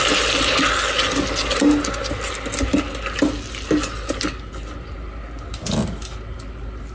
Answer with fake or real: real